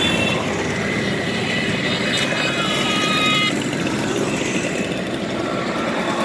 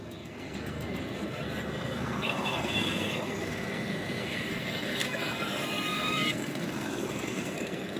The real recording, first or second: first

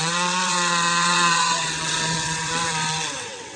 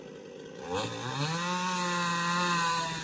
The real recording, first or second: second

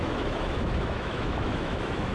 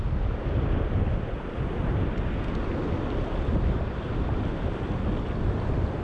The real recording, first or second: second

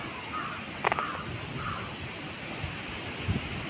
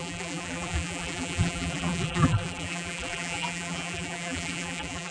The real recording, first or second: first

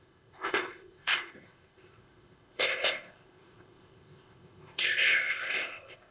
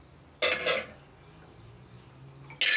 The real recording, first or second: second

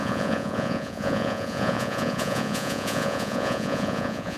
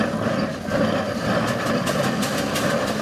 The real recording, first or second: second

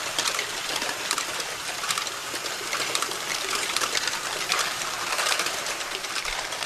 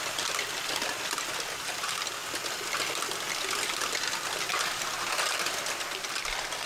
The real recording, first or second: second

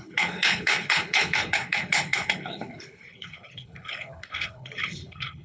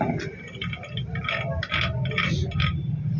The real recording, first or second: second